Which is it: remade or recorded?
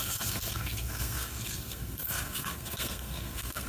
remade